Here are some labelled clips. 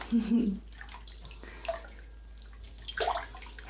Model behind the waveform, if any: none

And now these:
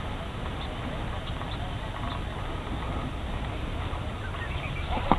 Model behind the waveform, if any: none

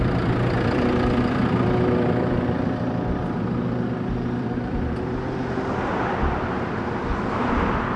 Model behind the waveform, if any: vocoder, BigVGAN v2